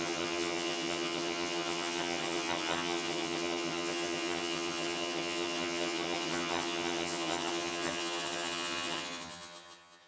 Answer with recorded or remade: remade